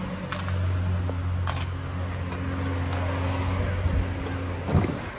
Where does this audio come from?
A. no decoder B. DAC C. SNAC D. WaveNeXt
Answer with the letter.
A